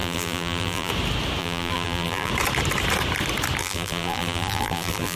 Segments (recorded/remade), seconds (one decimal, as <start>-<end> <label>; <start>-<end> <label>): 0.0-0.9 remade; 0.9-1.4 recorded; 1.4-2.3 remade; 2.3-3.6 recorded; 3.6-5.2 remade